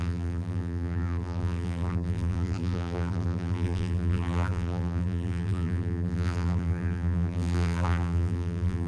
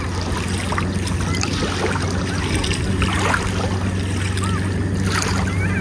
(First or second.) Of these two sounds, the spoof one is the first